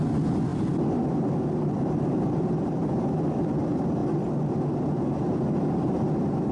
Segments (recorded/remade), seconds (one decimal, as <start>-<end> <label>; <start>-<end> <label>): 0.0-0.5 remade; 0.5-1.1 recorded; 1.1-4.0 remade; 4.0-5.6 recorded; 5.6-6.5 remade